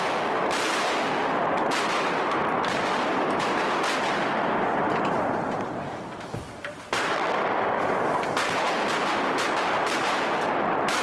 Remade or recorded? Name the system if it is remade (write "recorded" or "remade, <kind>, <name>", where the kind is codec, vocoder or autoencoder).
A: recorded